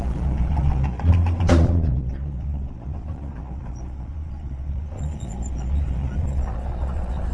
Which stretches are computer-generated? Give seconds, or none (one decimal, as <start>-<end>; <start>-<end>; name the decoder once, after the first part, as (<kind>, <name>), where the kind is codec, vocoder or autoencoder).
0.0-7.3 (vocoder, Vocos)